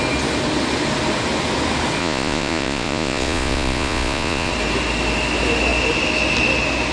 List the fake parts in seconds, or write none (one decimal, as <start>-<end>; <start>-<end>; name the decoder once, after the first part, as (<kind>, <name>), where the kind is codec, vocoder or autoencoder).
2.0-4.5 (vocoder, Vocos)